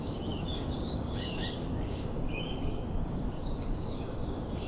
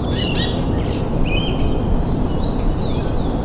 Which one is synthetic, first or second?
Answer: first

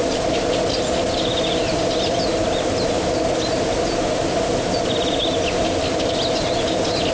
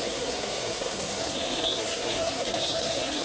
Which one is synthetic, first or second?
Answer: second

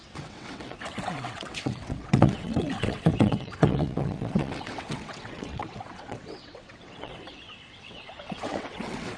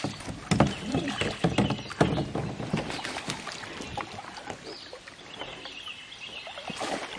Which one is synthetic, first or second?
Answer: first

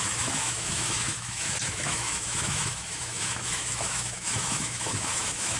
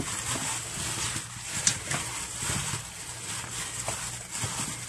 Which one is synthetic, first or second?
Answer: first